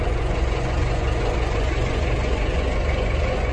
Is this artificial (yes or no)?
yes